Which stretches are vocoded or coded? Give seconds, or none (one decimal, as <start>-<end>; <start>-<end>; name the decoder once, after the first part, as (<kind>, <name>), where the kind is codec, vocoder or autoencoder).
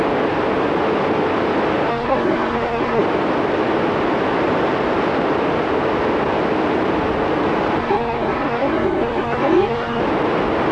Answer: 1.9-3.0 (codec, SNAC); 7.8-10.0